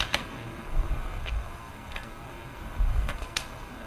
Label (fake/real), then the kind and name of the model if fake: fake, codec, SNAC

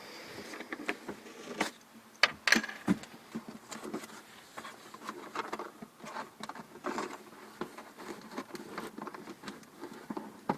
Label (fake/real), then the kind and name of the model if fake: real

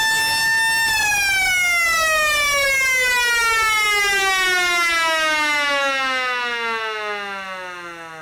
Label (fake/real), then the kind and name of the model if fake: real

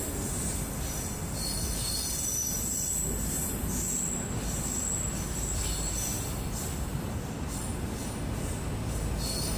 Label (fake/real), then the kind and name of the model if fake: real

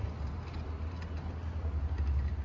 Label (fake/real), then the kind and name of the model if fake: real